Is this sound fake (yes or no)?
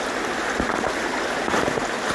no